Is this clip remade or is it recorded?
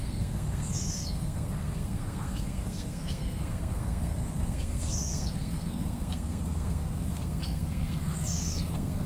remade